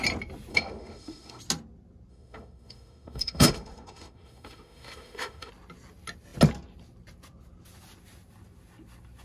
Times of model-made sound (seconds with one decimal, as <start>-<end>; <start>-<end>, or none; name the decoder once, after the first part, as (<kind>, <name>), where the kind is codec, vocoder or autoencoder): 0.5-1.4 (autoencoder, DAC-VAE); 2.1-5.5